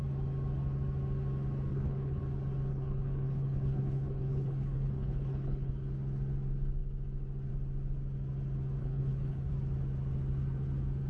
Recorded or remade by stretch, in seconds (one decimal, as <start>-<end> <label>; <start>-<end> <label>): 0.0-1.7 recorded; 1.7-2.2 remade; 2.2-2.7 recorded; 2.7-5.7 remade; 5.7-8.8 recorded; 8.8-9.5 remade; 9.5-11.1 recorded